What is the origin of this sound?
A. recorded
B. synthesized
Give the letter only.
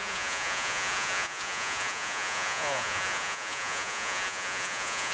B